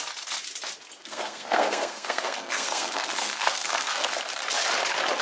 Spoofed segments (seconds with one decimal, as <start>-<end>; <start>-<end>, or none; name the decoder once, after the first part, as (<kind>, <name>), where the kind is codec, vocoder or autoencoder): 1.0-4.1 (codec, SNAC)